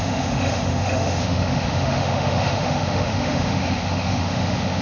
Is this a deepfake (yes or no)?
yes